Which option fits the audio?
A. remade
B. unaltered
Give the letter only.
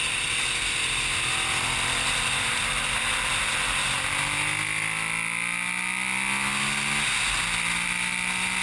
B